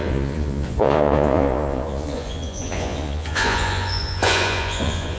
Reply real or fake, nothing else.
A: fake